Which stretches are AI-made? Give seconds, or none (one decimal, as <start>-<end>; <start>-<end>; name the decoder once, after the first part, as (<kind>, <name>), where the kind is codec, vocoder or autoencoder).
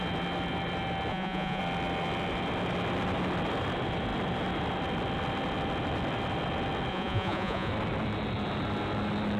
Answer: 1.1-1.6 (vocoder, Vocos); 6.9-7.7